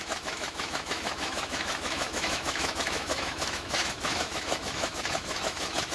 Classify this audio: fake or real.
fake